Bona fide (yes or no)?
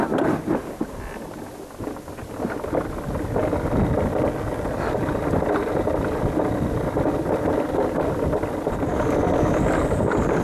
yes